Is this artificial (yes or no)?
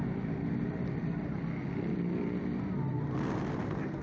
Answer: no